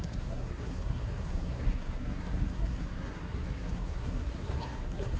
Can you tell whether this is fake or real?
fake